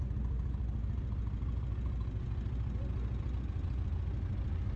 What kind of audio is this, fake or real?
real